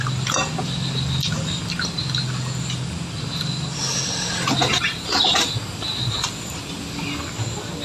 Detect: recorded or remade recorded